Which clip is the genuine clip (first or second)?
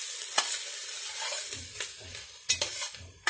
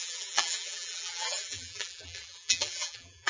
first